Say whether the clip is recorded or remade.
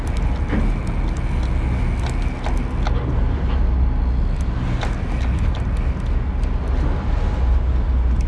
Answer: recorded